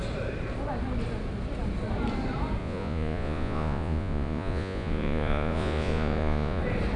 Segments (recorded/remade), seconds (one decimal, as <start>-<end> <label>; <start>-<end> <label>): 0.0-2.6 recorded; 2.6-6.6 remade; 6.6-7.0 recorded